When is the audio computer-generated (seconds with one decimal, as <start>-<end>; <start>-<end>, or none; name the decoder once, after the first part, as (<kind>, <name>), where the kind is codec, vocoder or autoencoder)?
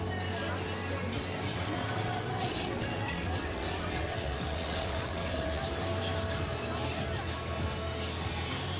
1.5-5.6 (vocoder, WaveNeXt)